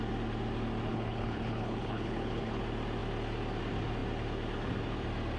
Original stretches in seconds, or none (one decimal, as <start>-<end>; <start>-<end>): 0.0-0.9; 2.6-5.4